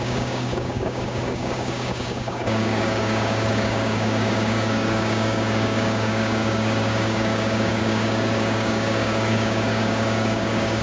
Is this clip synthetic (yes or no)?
yes